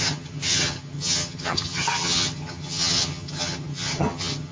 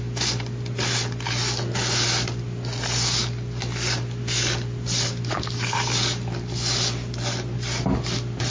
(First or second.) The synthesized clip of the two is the first